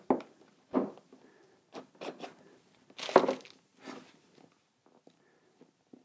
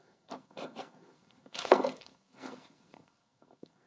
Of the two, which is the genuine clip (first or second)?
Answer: first